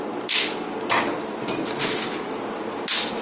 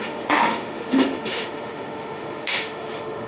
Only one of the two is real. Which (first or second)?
first